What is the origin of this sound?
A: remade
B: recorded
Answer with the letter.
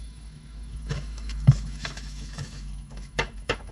A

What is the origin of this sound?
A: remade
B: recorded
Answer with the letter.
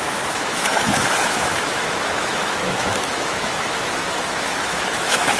A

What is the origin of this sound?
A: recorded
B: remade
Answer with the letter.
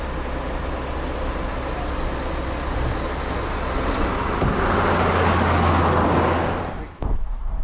A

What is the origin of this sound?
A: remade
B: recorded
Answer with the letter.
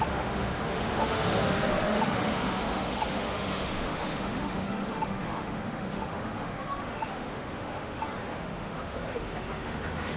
A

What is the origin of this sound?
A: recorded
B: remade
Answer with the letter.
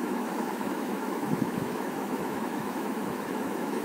B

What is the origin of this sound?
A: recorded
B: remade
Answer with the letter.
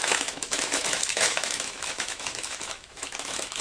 B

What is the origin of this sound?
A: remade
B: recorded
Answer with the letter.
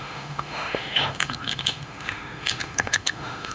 A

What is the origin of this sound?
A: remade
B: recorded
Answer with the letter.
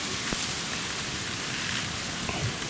B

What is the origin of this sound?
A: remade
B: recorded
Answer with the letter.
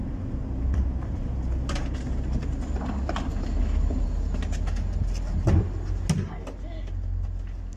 B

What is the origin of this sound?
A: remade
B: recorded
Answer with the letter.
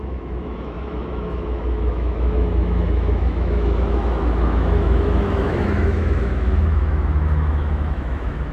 A